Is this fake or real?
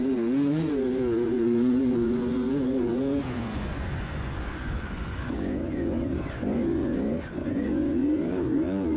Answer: fake